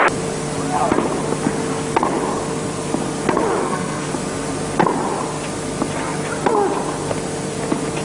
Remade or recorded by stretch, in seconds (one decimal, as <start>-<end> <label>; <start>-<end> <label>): 0.0-3.6 recorded; 3.6-4.1 remade; 4.1-8.0 recorded